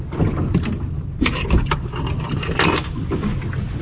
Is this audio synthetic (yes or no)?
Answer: no